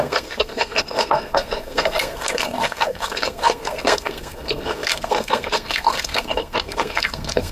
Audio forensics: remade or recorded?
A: remade